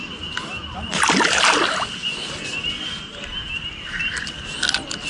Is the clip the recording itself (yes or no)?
yes